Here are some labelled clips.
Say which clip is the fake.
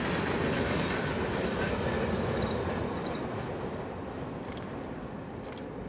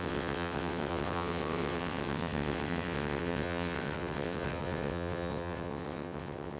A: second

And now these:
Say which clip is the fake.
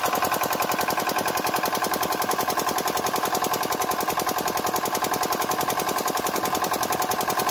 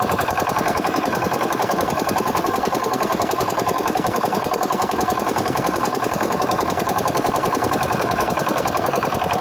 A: second